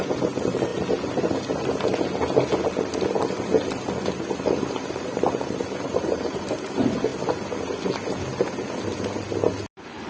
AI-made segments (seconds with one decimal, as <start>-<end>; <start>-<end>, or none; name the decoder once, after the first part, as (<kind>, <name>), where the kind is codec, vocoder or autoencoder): 0.0-0.7 (vocoder, BigVGAN v2); 4.9-7.1; 9.7-10.1